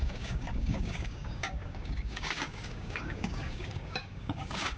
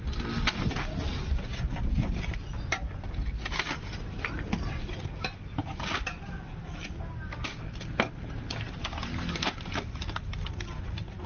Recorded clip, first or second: second